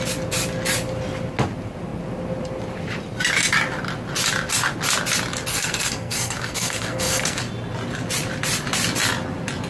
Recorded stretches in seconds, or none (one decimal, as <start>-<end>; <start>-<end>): 0.0-5.5; 7.4-9.7